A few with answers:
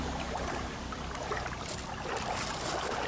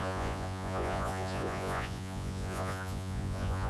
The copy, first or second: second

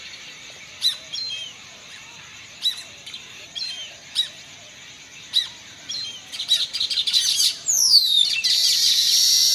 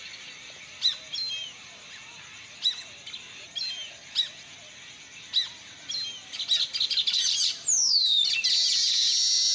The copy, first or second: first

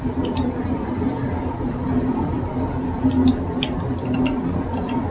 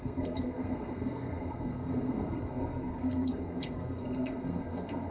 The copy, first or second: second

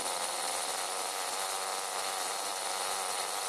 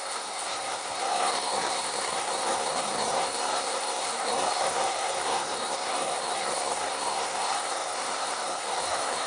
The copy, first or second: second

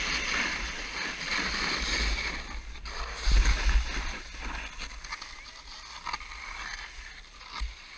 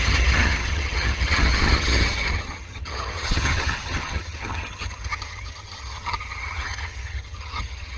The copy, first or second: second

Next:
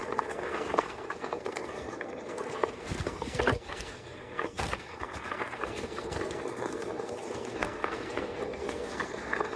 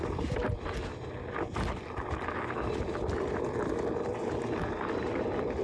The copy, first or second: first